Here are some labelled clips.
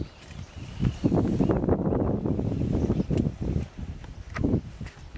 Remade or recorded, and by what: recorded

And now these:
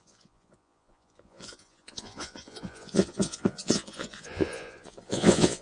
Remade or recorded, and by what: remade, vocoder, Vocos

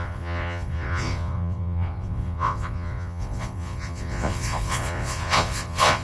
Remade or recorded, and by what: remade, vocoder, Vocos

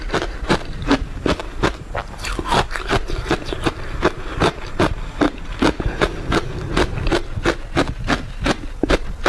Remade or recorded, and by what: recorded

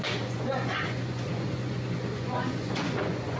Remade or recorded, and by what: remade, vocoder, Vocos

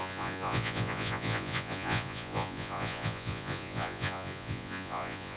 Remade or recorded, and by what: remade, vocoder, Vocos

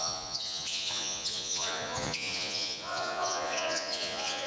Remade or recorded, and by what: remade, vocoder, Vocos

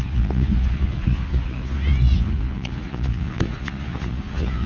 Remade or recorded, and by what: remade, vocoder, Vocos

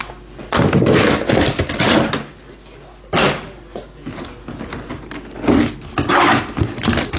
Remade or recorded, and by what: recorded